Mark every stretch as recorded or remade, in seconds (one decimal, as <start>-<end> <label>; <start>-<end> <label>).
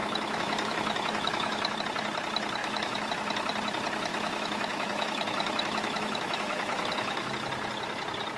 0.0-1.8 remade; 1.8-2.6 recorded; 2.6-3.1 remade; 3.1-4.1 recorded; 4.1-7.3 remade; 7.3-8.4 recorded